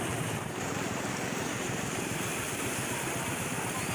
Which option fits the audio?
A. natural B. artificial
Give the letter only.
B